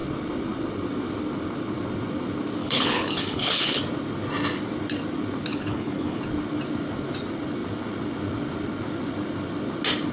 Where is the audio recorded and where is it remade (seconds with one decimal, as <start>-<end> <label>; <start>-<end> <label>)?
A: 0.0-2.6 recorded; 2.6-3.8 remade; 3.8-5.5 recorded; 5.5-6.2 remade; 6.2-10.1 recorded